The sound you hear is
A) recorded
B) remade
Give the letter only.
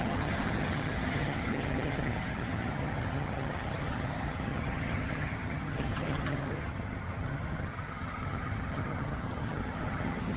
B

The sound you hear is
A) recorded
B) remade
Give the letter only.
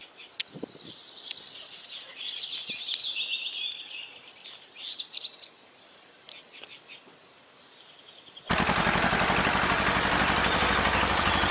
B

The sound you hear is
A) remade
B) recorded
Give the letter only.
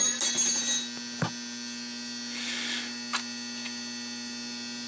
B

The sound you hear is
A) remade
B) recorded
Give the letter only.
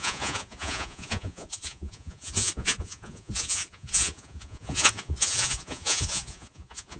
A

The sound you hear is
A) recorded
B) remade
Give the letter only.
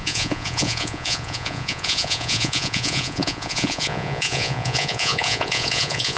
B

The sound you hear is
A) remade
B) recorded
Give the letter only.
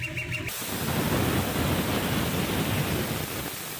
B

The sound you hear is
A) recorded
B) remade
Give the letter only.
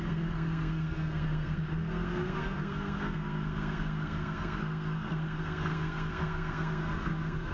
B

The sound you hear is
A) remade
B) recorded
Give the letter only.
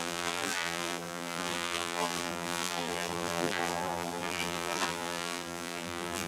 A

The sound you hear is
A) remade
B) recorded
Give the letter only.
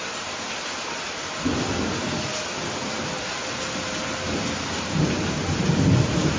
B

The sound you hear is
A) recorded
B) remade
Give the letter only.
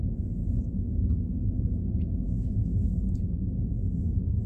B